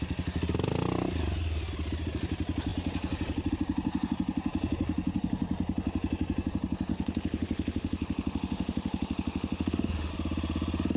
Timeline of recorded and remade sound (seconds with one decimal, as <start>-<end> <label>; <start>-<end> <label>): 0.0-6.9 recorded; 6.9-10.1 remade; 10.1-11.0 recorded